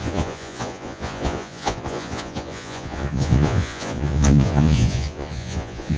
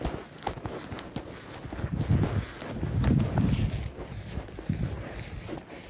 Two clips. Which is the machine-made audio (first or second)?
first